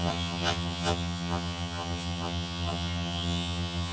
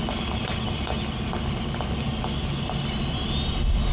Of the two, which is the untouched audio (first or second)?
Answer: second